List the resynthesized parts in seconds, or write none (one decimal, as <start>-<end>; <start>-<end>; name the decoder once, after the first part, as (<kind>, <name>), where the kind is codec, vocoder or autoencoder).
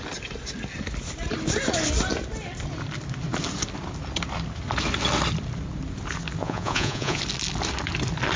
6.4-7.2 (vocoder, Vocos)